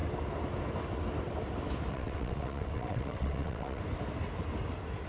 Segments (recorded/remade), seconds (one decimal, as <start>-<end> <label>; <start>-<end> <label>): 0.0-1.9 recorded; 1.9-3.8 remade; 3.8-5.1 recorded